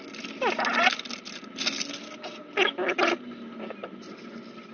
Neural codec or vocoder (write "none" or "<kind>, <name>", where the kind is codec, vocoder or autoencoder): none